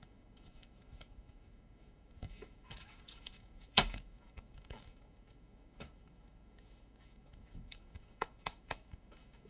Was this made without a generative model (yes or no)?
no